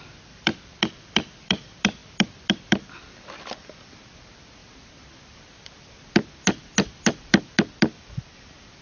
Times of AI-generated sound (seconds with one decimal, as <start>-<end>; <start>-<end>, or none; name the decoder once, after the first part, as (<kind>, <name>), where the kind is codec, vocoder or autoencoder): 0.0-8.8 (vocoder, BigVGAN v2)